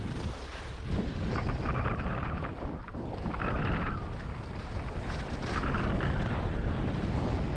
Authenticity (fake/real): fake